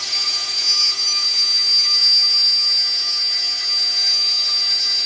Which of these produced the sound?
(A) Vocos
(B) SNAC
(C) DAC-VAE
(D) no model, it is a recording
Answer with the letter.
C